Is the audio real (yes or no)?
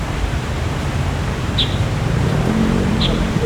no